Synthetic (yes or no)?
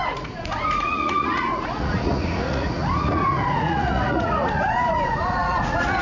yes